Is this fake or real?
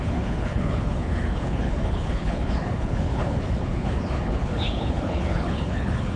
fake